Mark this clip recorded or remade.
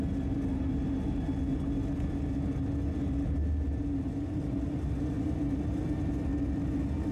recorded